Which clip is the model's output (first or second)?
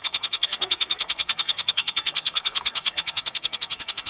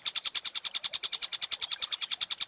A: first